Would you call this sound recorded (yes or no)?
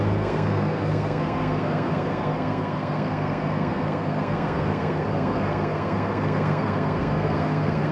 no